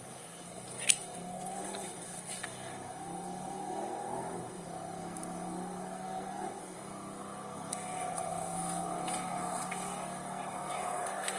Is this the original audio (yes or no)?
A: no